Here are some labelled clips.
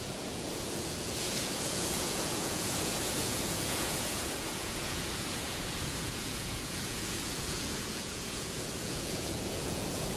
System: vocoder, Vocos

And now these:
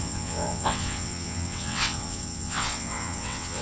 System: vocoder, WaveNeXt